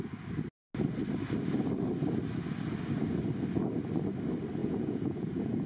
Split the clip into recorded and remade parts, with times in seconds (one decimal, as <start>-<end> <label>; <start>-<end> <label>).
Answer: 0.0-4.6 recorded; 4.6-5.7 remade